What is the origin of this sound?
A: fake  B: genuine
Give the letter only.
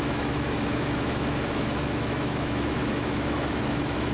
A